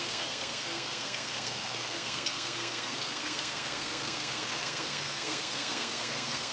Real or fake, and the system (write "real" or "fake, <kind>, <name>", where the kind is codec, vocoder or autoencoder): fake, codec, SNAC